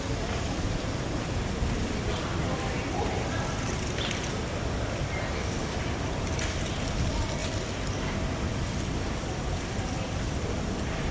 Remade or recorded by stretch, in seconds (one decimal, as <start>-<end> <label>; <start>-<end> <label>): 0.0-11.1 remade